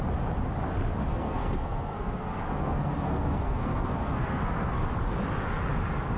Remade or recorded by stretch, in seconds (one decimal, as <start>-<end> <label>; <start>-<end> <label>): 0.0-1.1 recorded; 1.1-4.8 remade; 4.8-6.2 recorded